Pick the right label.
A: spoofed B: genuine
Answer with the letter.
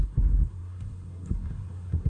A